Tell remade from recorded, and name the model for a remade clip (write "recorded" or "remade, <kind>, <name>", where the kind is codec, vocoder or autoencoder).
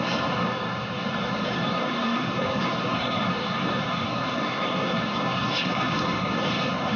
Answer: remade, codec, SNAC